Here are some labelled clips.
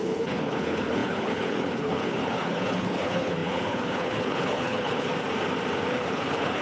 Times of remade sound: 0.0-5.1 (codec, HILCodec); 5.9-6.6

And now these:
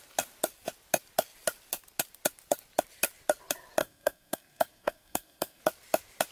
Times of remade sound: 3.8-5.6 (codec, SNAC)

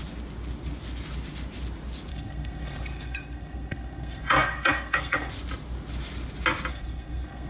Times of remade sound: 2.1-5.3 (codec, SNAC); 6.7-7.5

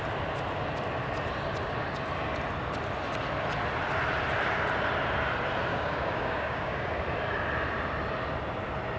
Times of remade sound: 5.7-6.9 (codec, DAC)